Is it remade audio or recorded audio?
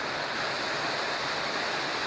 recorded